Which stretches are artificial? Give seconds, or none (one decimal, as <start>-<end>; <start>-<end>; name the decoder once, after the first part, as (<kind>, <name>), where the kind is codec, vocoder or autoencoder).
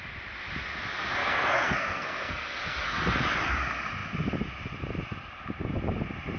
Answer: 1.2-3.2 (codec, SNAC)